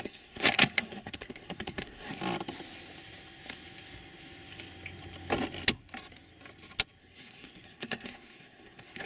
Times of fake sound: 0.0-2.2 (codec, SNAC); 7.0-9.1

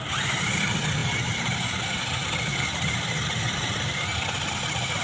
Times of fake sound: none